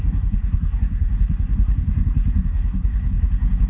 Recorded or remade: remade